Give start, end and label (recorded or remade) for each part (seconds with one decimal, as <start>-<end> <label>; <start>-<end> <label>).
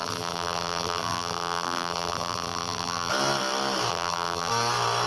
0.0-3.1 remade; 3.1-3.9 recorded; 3.9-4.5 remade; 4.5-5.1 recorded